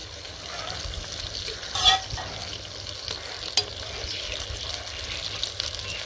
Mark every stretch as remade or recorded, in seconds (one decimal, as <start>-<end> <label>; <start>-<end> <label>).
0.0-6.1 recorded